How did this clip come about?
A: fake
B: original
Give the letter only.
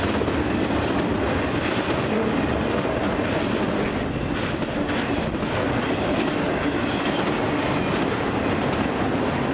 B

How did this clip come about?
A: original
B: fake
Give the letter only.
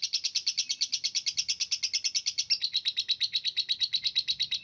A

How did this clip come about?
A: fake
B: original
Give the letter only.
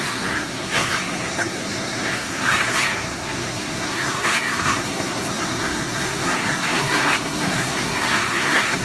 A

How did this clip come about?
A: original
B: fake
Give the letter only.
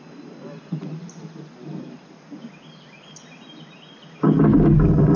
A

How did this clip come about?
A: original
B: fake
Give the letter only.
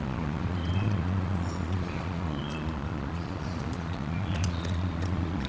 B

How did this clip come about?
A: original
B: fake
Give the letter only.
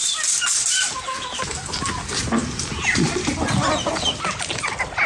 A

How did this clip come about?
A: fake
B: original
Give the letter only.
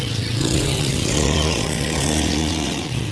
A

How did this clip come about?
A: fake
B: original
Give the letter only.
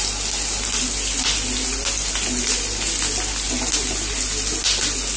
B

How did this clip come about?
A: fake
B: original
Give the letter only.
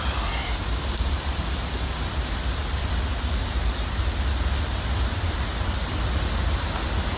B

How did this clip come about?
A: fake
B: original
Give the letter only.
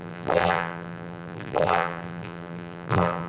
A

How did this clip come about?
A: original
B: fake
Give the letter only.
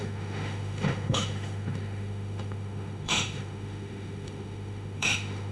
B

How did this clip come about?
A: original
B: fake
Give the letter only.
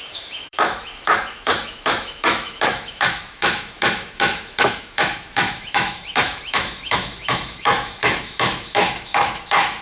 B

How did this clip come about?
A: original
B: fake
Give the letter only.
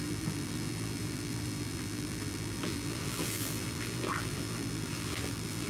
B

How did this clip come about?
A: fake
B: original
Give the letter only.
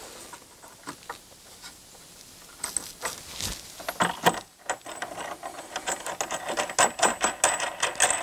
B